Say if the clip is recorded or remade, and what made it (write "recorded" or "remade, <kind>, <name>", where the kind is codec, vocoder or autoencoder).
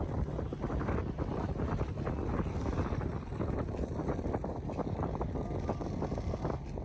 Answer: recorded